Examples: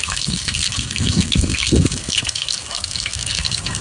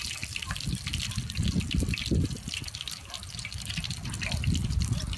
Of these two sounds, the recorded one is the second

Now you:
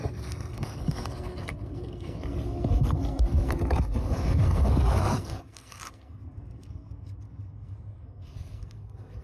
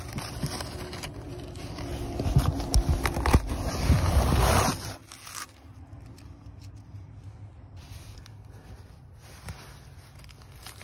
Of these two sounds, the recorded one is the second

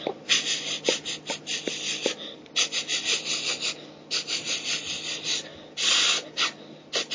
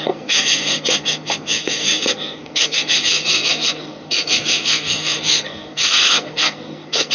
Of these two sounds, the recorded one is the first